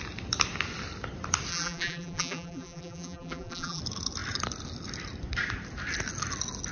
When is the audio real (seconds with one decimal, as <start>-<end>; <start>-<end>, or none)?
0.0-1.5; 3.8-6.7

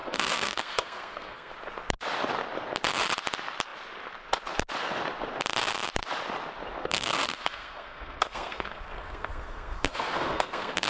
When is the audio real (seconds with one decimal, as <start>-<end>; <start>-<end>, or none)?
1.5-6.8

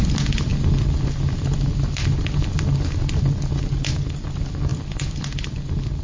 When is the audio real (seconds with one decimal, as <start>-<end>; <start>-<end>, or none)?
0.0-6.0